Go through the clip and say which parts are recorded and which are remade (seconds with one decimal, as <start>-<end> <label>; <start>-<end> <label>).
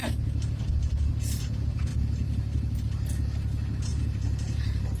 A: 0.0-3.9 recorded; 3.9-5.0 remade